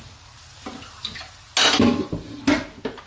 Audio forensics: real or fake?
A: real